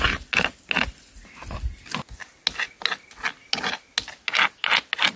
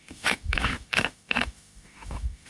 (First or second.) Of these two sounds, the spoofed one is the second